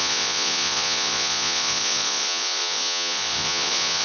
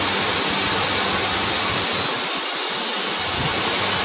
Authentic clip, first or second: second